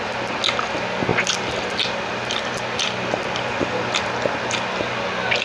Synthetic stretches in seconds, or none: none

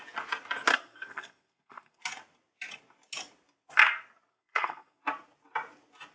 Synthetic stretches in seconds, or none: 0.7-2.0 (codec, SNAC); 4.3-5.0

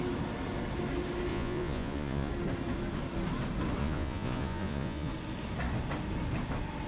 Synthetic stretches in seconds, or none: 1.3-2.3 (vocoder, Vocos); 3.8-5.1

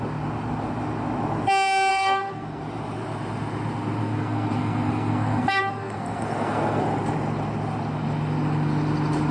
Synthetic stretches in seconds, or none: 1.9-2.6 (codec, SNAC); 4.0-6.8

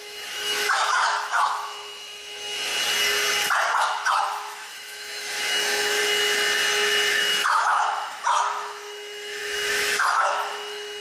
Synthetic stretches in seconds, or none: 0.0-2.7 (autoencoder, DAC-VAE); 3.8-6.0; 7.1-11.0